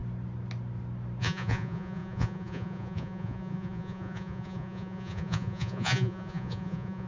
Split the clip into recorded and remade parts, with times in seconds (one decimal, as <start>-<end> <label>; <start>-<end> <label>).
0.0-1.2 recorded; 1.2-7.1 remade